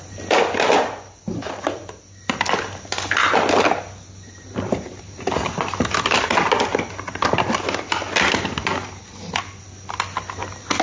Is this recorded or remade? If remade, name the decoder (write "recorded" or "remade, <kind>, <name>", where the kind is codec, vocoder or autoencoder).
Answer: recorded